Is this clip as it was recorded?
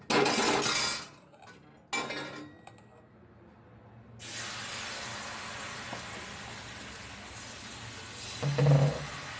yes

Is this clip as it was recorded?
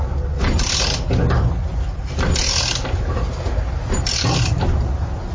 yes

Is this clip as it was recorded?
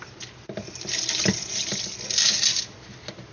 yes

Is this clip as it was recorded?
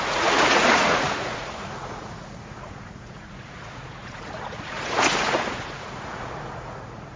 no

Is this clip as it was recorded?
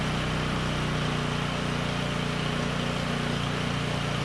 yes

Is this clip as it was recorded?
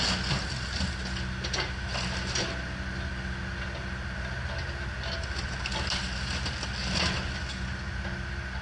yes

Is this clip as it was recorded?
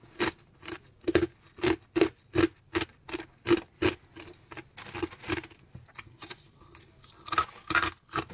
yes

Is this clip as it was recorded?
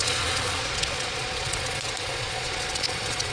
no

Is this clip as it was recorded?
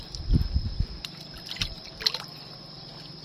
yes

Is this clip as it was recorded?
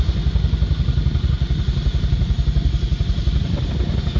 yes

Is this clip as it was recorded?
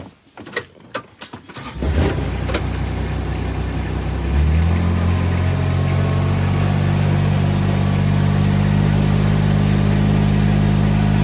yes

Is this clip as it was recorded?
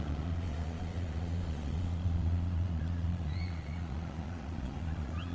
no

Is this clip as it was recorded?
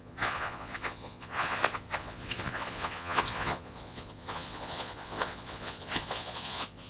no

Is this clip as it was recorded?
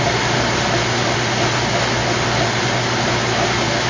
yes